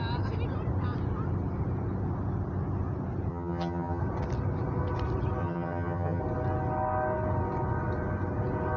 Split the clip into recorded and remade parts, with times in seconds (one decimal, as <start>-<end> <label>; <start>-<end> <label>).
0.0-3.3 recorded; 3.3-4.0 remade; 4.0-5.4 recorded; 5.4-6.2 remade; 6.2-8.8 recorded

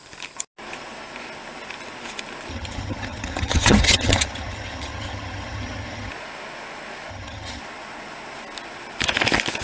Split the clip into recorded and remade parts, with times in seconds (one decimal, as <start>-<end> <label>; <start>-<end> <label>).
0.0-2.5 recorded; 2.5-6.1 remade; 6.1-7.1 recorded; 7.1-7.6 remade; 7.6-9.6 recorded

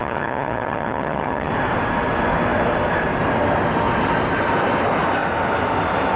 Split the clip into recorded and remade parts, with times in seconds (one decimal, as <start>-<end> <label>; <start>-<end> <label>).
0.0-1.5 remade; 1.5-6.2 recorded

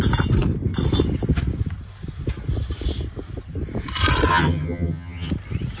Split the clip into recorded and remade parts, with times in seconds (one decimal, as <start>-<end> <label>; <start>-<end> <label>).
0.0-4.3 recorded; 4.3-5.3 remade; 5.3-5.8 recorded

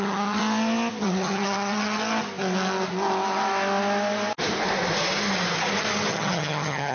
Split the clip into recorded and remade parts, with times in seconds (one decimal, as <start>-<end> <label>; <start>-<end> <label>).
0.0-0.4 remade; 0.4-1.0 recorded; 1.0-2.0 remade; 2.0-6.1 recorded; 6.1-6.9 remade

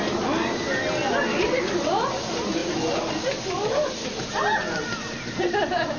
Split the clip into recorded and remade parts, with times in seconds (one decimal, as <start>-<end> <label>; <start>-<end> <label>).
0.0-6.0 recorded

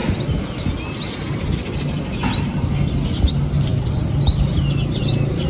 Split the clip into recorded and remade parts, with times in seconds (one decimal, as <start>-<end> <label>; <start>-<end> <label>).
0.0-5.5 recorded